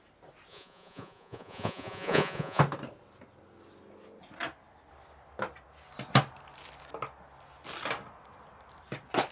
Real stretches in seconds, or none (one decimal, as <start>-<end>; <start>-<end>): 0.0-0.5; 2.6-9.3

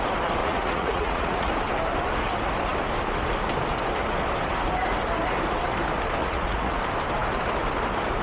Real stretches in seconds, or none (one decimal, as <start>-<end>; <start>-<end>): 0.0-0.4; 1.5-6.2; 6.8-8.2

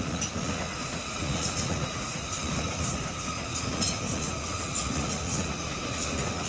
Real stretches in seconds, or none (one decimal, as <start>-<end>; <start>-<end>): none

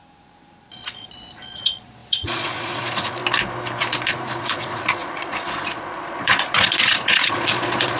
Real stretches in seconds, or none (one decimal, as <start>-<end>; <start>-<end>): 3.2-4.1

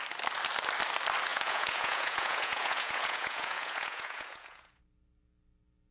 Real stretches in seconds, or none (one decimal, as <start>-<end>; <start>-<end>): 0.0-1.3; 4.8-5.9

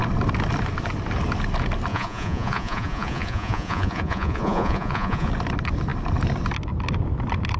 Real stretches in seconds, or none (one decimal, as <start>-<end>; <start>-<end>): 0.0-1.9; 5.3-7.6